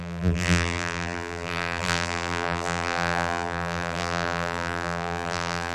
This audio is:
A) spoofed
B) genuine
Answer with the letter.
A